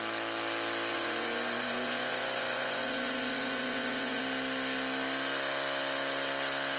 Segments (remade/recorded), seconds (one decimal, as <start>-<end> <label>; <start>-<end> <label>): 0.0-0.9 recorded; 0.9-4.2 remade; 4.2-6.8 recorded